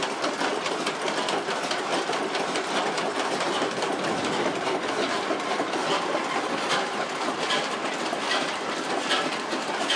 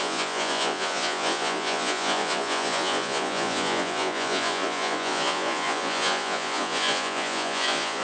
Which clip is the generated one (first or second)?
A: second